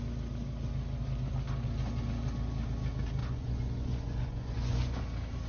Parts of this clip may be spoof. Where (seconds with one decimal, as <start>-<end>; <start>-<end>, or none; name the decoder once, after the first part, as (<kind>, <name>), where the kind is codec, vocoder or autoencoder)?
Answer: 3.2-5.0 (vocoder, Vocos)